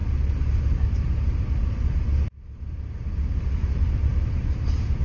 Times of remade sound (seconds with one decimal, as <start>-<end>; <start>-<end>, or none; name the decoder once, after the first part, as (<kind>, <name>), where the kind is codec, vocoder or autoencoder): 2.2-5.0 (vocoder, BigVGAN v2)